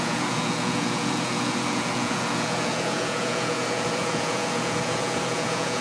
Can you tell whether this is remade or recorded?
remade